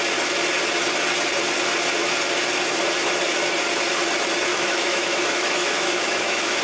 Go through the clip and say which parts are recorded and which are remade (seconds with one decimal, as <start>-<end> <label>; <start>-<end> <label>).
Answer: 0.0-4.5 recorded; 4.5-6.6 remade